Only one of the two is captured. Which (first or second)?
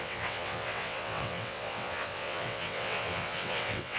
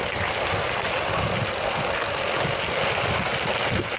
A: second